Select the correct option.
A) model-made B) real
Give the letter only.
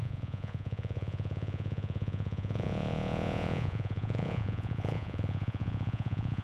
A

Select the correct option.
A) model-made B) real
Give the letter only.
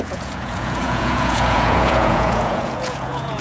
A